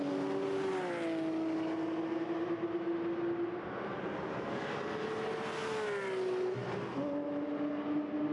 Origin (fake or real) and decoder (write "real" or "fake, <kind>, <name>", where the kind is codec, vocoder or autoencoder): real